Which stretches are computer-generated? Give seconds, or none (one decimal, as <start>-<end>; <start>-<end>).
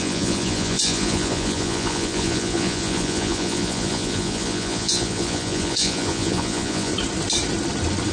0.0-6.9